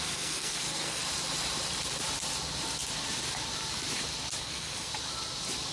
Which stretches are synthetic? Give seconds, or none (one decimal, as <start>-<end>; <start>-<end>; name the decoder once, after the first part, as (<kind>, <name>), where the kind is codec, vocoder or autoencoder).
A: 0.0-1.0 (codec, SNAC); 4.4-4.9